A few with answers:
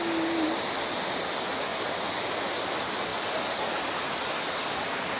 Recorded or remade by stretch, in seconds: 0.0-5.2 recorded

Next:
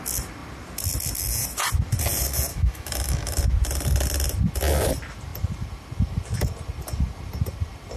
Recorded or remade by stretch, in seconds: 0.0-2.5 recorded; 2.5-3.4 remade; 3.4-8.0 recorded

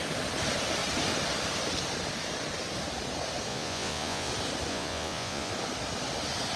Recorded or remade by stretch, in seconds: 0.0-3.5 recorded; 3.5-4.3 remade; 4.3-4.7 recorded; 4.7-5.5 remade; 5.5-6.6 recorded